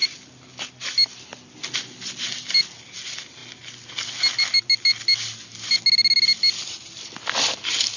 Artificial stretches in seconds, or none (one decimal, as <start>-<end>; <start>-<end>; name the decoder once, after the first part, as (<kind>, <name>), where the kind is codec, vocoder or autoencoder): none